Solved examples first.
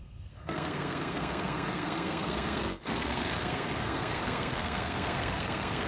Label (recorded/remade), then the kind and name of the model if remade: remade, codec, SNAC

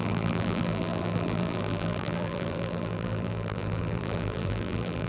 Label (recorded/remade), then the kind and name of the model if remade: remade, vocoder, BigVGAN v2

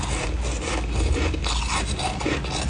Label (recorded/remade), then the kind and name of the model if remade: recorded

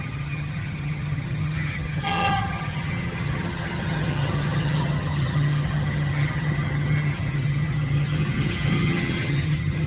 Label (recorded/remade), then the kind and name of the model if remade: remade, vocoder, HiFi-GAN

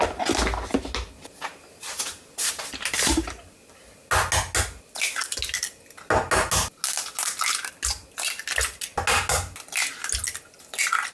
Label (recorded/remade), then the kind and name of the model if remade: recorded